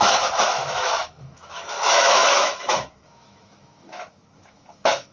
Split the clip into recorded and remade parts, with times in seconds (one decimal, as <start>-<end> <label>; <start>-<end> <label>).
0.0-5.1 remade